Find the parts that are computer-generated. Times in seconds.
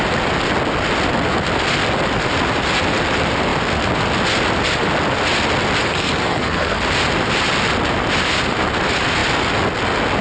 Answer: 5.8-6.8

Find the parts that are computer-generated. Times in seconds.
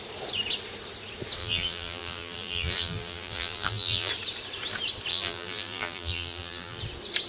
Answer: 1.4-4.1; 5.1-6.8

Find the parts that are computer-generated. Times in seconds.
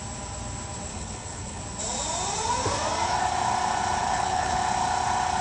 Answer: 0.9-1.6; 4.0-4.6